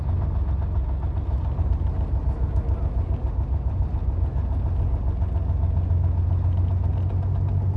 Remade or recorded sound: recorded